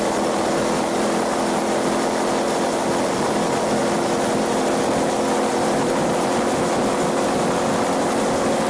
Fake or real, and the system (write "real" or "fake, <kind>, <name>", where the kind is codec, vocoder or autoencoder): real